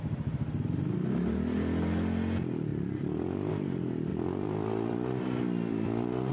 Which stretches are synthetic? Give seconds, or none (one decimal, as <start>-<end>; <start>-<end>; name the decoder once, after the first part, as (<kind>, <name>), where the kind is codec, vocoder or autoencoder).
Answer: 2.7-3.5 (vocoder, BigVGAN v2); 4.1-6.3